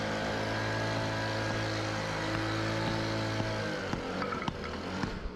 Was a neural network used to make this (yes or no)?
no